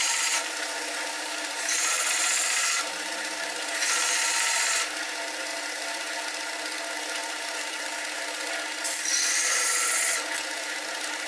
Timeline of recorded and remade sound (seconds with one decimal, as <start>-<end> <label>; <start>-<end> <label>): 0.0-4.3 remade; 4.3-5.5 recorded; 5.5-6.2 remade; 6.2-7.2 recorded; 7.2-8.1 remade; 8.1-11.3 recorded